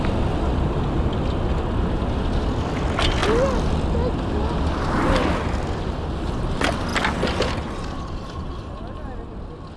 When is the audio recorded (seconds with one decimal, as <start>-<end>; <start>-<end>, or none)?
0.0-9.8